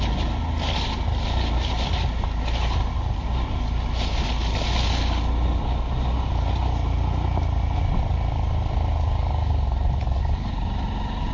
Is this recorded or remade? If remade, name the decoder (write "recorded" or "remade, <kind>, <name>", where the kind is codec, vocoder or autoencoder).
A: recorded